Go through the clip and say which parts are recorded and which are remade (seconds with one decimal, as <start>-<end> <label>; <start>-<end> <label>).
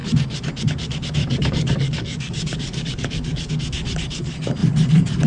0.0-1.2 recorded; 1.2-3.5 remade; 3.5-5.3 recorded